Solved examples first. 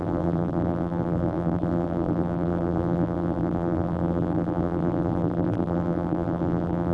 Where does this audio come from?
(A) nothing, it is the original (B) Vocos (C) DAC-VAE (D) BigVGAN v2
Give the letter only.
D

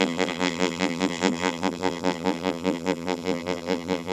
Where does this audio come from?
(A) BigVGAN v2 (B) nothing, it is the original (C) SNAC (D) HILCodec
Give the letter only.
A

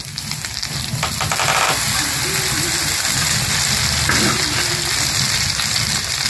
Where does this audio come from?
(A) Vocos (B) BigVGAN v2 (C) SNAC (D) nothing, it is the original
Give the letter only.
B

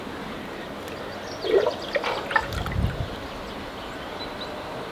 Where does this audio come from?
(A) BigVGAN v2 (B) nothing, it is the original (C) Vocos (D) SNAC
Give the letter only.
B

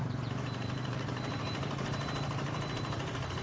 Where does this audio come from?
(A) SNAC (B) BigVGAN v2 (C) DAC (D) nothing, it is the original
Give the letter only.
B